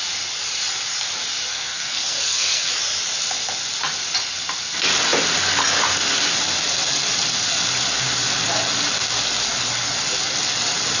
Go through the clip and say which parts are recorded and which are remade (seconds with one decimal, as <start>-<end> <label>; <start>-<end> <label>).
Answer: 0.0-1.5 recorded; 1.5-2.7 remade; 2.7-11.0 recorded